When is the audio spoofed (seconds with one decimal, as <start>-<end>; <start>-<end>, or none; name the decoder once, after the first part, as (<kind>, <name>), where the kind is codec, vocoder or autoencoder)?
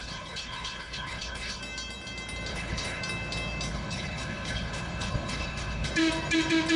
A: 0.0-1.6 (codec, HILCodec); 2.5-3.0; 3.7-5.9